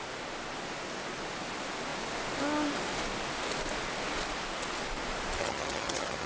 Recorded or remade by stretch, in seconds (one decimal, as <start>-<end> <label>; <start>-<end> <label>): 0.0-5.4 recorded; 5.4-6.3 remade